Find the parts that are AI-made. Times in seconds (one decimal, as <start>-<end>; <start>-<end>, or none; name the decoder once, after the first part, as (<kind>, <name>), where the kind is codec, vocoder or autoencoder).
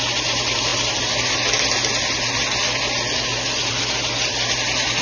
none